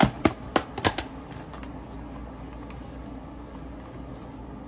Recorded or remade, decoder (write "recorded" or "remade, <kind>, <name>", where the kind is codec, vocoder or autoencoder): recorded